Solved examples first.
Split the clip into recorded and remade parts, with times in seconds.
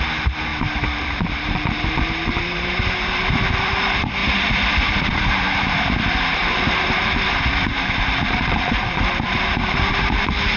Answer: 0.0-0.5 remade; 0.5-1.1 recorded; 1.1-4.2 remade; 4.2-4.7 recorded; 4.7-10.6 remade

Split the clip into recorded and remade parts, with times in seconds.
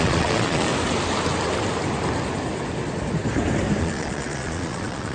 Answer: 0.0-0.7 remade; 0.7-3.8 recorded; 3.8-5.1 remade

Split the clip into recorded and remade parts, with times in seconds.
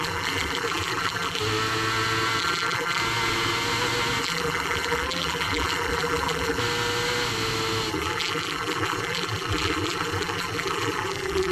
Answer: 0.0-1.4 remade; 1.4-2.4 recorded; 2.4-3.0 remade; 3.0-4.2 recorded; 4.2-6.6 remade; 6.6-7.9 recorded; 7.9-11.5 remade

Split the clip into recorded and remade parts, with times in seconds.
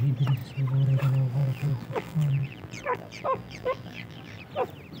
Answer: 0.0-1.4 recorded; 1.4-4.4 remade; 4.4-5.0 recorded